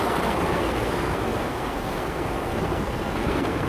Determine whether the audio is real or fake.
fake